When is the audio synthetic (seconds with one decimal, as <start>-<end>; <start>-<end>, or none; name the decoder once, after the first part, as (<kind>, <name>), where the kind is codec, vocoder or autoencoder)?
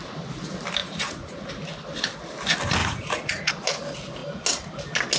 0.8-1.5 (vocoder, Vocos); 2.8-3.5